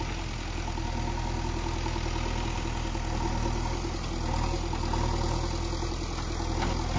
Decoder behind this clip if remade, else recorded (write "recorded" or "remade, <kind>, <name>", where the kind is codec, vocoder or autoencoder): recorded